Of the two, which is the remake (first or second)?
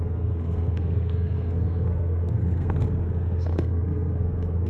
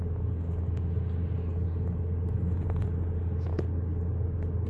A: first